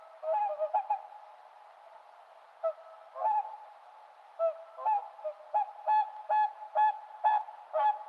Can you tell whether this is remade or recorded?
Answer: recorded